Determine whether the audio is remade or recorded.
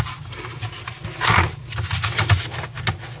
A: recorded